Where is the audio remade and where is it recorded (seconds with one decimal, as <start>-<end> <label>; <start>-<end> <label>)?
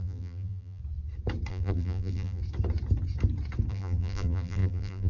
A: 0.0-0.8 remade; 0.8-1.5 recorded; 1.5-2.4 remade; 2.4-3.7 recorded; 3.7-5.1 remade